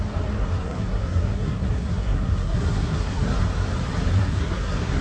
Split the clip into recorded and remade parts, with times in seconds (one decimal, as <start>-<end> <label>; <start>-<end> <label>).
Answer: 0.0-0.4 recorded; 0.4-3.4 remade; 3.4-4.2 recorded; 4.2-5.0 remade